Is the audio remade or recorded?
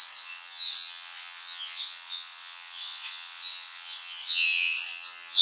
remade